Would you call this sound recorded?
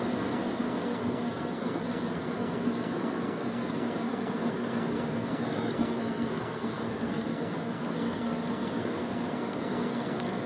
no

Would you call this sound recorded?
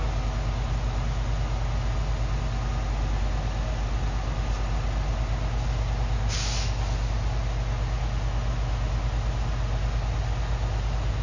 yes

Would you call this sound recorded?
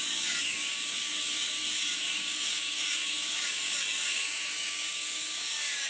no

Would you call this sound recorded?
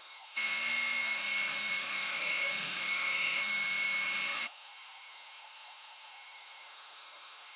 no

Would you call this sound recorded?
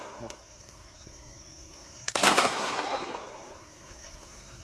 no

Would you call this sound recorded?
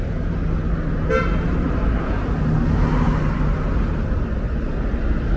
yes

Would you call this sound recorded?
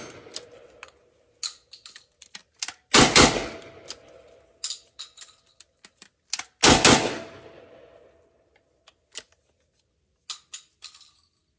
yes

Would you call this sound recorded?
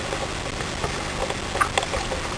yes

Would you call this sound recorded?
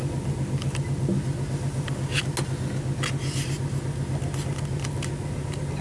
yes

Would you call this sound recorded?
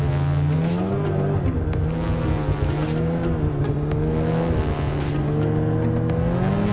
yes